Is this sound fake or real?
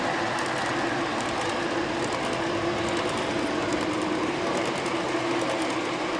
real